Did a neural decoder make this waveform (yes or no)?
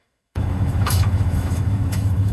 yes